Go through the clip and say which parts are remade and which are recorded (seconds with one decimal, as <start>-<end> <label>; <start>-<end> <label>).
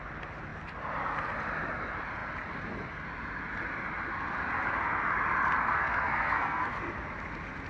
0.0-5.7 recorded; 5.7-6.7 remade; 6.7-7.7 recorded